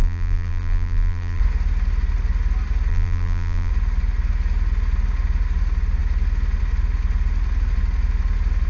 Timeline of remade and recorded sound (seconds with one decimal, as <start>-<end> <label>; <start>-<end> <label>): 0.0-1.4 remade; 1.4-2.9 recorded; 2.9-3.7 remade; 3.7-8.7 recorded